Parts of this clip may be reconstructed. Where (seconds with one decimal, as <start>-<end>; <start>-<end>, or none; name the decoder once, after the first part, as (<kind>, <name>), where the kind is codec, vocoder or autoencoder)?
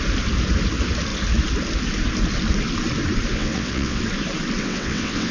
3.3-4.0 (vocoder, WaveNeXt); 4.6-5.3